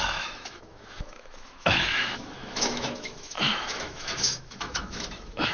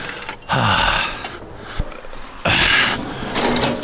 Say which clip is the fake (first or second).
first